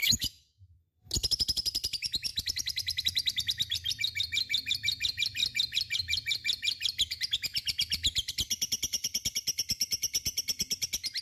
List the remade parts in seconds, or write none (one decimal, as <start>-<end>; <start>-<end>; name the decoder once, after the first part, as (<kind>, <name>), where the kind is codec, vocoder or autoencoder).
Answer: 0.0-0.8 (autoencoder, DAC-VAE)